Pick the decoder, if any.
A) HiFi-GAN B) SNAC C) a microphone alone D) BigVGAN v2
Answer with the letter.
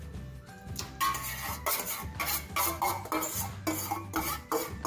C